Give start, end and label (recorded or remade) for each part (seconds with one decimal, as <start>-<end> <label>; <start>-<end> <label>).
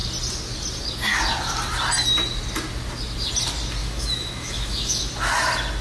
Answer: 0.0-3.8 recorded; 3.8-5.1 remade; 5.1-5.8 recorded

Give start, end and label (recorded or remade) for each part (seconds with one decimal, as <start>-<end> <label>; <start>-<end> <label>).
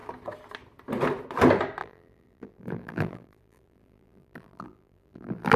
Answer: 0.0-1.8 recorded; 1.8-5.6 remade